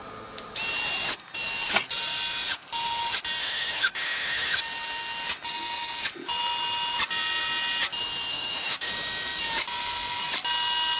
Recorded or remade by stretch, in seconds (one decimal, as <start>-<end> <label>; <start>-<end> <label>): 0.0-3.4 recorded; 3.4-4.6 remade; 4.6-8.3 recorded; 8.3-8.9 remade; 8.9-11.0 recorded